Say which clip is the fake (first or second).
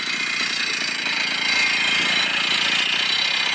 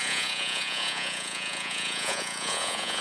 second